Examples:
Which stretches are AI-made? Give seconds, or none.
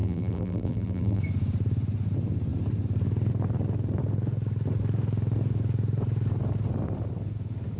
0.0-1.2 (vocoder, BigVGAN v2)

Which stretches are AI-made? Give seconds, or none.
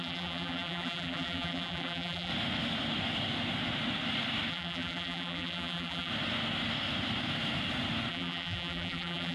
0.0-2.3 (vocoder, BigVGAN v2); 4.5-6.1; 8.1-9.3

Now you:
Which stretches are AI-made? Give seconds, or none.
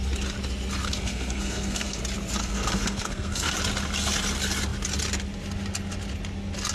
0.8-2.0 (codec, SNAC); 2.4-3.5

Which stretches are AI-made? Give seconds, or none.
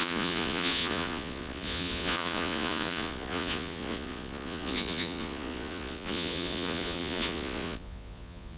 0.0-8.6 (vocoder, Vocos)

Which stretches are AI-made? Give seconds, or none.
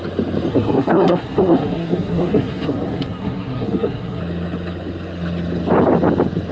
0.5-4.2 (codec, SNAC)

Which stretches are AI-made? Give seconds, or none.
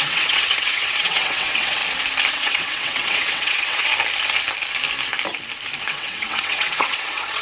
0.0-1.8 (vocoder, WaveNeXt); 2.3-3.9; 5.8-7.4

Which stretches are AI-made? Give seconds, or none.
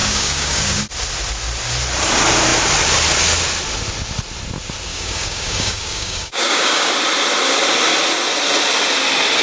0.0-0.8 (codec, DAC); 4.9-6.9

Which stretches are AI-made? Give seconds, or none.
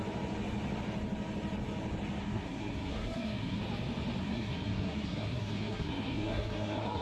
2.2-3.6 (codec, SNAC); 4.2-7.0